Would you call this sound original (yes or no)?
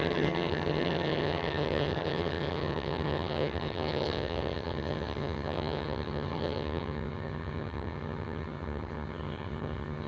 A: no